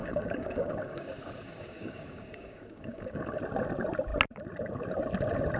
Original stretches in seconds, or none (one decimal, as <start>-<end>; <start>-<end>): 3.4-5.6